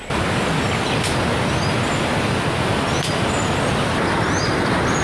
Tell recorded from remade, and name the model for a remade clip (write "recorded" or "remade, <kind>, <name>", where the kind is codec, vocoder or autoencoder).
recorded